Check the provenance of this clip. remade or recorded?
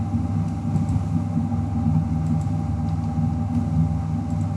recorded